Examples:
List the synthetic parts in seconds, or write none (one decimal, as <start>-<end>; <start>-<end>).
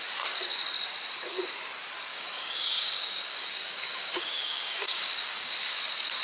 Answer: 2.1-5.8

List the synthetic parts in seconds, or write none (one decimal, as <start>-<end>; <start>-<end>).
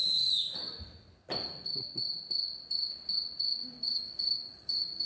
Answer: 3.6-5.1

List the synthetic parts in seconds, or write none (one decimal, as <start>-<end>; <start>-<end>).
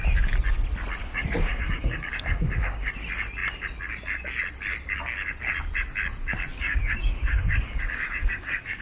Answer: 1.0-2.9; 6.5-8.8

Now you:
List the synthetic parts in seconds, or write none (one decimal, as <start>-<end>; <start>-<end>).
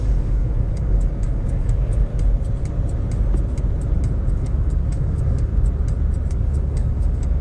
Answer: 0.0-2.1; 4.3-5.5; 6.3-7.4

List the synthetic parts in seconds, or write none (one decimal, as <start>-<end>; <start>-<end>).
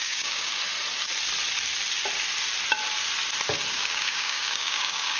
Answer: 0.0-0.6; 3.7-5.2